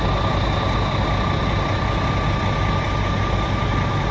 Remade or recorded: recorded